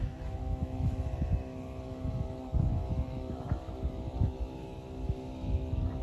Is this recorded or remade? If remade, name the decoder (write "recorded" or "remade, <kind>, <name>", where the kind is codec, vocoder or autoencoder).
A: remade, autoencoder, DAC-VAE